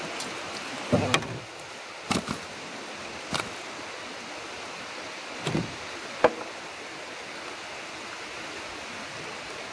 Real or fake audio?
real